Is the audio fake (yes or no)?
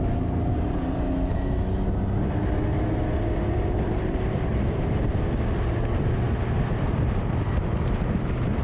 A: no